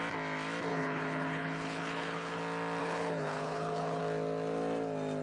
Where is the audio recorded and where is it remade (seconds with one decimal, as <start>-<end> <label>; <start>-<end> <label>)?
0.0-0.7 recorded; 0.7-2.4 remade; 2.4-2.8 recorded; 2.8-4.0 remade; 4.0-5.2 recorded